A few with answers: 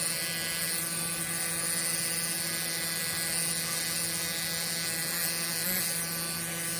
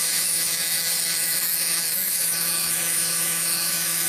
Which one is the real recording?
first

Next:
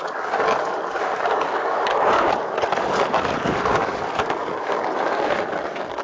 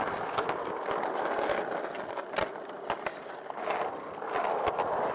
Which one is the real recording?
second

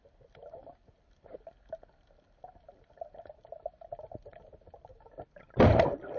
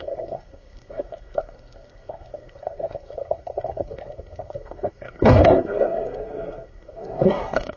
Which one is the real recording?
first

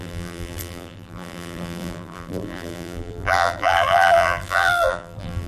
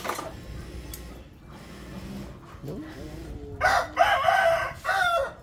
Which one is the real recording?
second